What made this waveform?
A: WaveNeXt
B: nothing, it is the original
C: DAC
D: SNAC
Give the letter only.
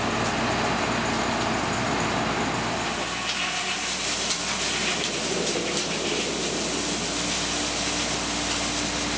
B